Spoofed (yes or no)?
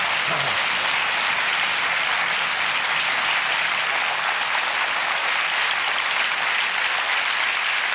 no